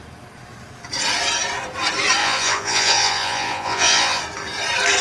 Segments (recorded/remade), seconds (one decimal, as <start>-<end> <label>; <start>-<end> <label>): 0.0-2.2 recorded; 2.2-4.2 remade; 4.2-5.0 recorded